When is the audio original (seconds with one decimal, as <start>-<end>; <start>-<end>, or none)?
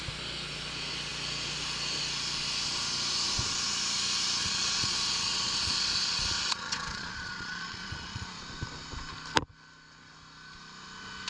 0.0-4.4; 8.4-11.3